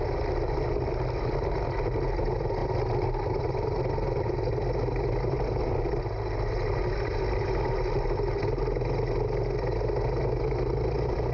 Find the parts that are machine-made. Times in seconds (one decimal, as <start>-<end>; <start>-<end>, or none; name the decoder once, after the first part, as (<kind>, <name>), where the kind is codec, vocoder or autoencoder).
none